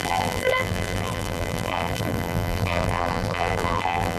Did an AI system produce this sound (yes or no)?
yes